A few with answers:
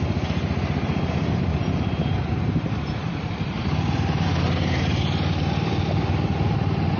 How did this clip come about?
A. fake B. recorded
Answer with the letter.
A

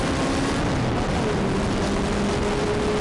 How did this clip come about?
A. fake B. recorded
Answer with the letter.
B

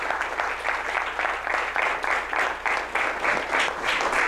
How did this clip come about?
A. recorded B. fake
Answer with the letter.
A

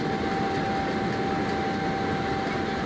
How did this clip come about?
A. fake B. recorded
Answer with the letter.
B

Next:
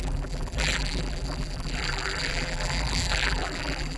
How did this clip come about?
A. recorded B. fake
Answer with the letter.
B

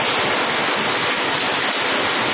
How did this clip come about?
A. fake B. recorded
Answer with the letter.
B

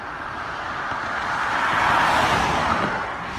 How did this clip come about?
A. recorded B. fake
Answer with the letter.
B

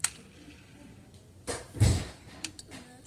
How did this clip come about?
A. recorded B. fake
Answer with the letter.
A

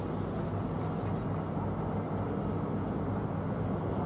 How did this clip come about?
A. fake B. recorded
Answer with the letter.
B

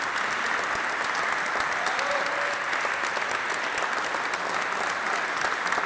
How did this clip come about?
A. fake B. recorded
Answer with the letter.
B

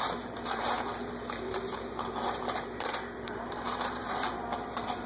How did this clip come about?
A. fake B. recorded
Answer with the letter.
A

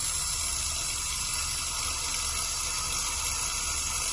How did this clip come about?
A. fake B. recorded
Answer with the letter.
B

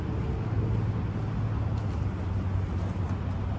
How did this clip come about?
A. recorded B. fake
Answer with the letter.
A